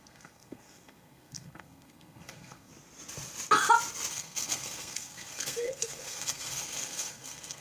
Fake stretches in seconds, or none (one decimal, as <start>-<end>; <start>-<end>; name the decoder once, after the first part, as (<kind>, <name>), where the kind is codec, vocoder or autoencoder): 0.0-2.7 (codec, SNAC); 4.1-7.6

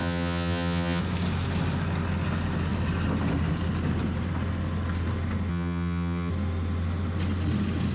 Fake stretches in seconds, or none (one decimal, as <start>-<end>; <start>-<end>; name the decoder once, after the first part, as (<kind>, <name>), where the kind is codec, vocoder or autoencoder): 0.0-1.0 (vocoder, HiFi-GAN); 5.5-6.3

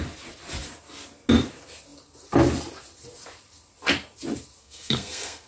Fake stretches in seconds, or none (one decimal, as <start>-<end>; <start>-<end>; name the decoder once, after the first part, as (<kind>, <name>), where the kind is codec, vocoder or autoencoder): 4.6-5.5 (codec, SNAC)

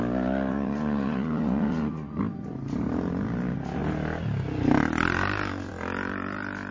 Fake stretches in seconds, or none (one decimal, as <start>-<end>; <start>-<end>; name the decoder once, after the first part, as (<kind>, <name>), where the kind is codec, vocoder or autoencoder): 0.5-2.2 (vocoder, Vocos)

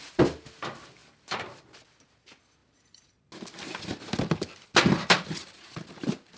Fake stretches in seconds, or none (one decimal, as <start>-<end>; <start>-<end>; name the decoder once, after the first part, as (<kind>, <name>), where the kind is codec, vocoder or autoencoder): none

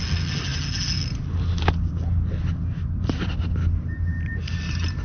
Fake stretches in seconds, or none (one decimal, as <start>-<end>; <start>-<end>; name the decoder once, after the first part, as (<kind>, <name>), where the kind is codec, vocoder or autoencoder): none